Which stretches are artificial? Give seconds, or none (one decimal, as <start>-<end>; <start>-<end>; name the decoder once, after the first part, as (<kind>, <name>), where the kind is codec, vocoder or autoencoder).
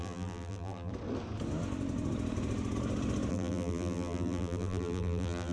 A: 0.0-0.9 (vocoder, BigVGAN v2); 3.3-5.5